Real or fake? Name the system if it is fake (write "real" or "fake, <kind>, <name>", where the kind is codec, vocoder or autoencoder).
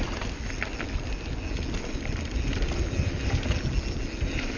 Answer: real